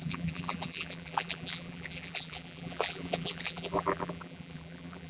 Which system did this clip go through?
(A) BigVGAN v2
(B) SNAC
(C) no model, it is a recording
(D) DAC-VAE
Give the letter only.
A